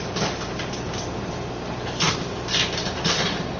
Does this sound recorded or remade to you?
recorded